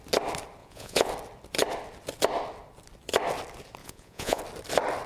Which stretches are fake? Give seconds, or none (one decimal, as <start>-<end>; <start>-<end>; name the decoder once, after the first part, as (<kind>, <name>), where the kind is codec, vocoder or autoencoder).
0.6-1.1 (vocoder, Vocos); 3.8-4.4